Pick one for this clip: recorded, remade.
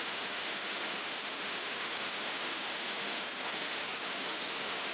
remade